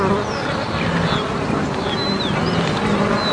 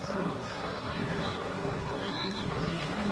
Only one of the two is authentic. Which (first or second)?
first